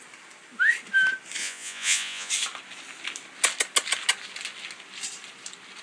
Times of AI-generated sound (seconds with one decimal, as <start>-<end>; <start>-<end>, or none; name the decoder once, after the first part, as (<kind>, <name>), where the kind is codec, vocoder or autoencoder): 1.4-2.3 (vocoder, Vocos)